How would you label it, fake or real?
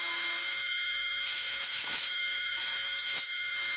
fake